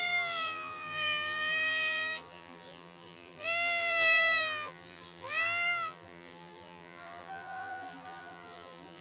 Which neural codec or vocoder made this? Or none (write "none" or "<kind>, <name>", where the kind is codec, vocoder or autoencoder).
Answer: vocoder, BigVGAN v2